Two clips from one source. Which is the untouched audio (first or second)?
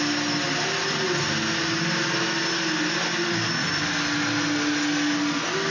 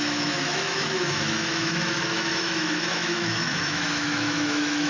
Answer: first